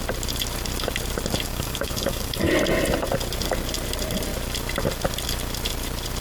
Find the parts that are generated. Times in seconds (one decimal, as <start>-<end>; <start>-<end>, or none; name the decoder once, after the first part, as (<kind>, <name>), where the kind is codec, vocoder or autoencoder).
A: 1.5-2.5 (codec, DAC)